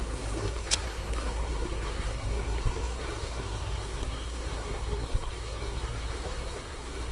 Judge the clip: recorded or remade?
remade